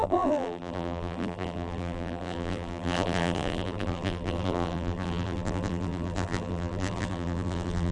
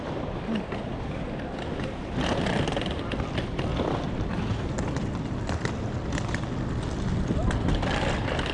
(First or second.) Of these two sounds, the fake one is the first